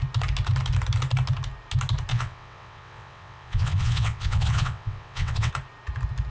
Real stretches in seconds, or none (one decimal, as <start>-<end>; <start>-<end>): 0.0-2.1; 5.5-6.3